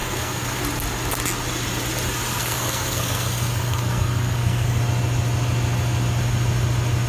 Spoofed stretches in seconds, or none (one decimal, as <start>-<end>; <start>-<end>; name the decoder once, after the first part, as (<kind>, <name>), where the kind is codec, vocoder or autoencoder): 0.0-0.6 (codec, SNAC); 2.3-4.8